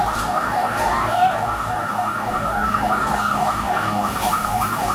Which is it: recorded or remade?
remade